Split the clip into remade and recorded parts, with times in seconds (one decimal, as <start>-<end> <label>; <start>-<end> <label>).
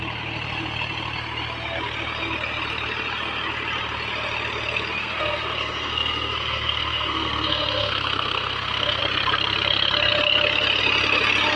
0.0-5.0 recorded; 5.0-9.0 remade; 9.0-11.6 recorded